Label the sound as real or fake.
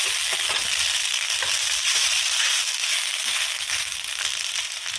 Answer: real